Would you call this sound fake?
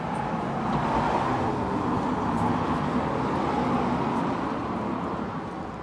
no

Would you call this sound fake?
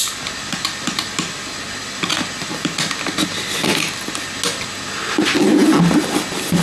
no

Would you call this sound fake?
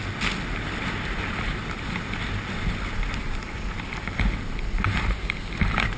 no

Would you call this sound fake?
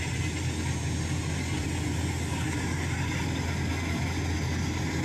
no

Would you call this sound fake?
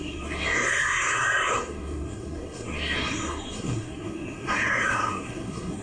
yes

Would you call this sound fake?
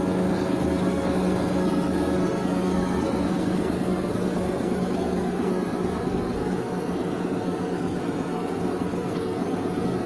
yes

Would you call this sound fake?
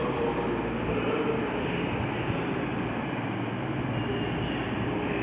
no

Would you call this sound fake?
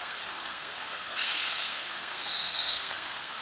yes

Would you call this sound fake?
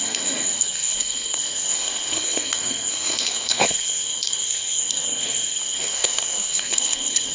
yes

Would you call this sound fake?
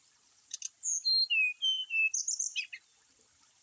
no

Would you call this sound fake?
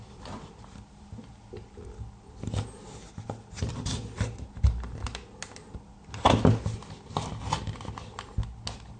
no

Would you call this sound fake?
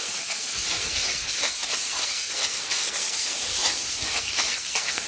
yes